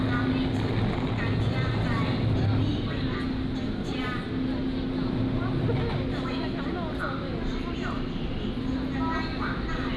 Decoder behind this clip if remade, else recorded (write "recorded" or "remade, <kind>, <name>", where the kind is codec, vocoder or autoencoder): recorded